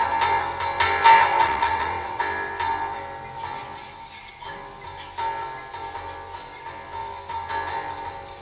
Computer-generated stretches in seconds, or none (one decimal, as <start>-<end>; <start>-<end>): 1.3-2.2